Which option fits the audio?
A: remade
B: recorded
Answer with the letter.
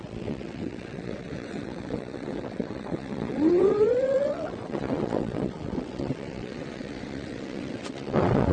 A